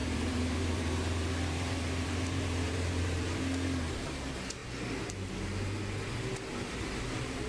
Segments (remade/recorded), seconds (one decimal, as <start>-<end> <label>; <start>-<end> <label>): 0.0-3.4 remade; 3.4-7.5 recorded